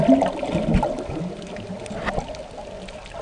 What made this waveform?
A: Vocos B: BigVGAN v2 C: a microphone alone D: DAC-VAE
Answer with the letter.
C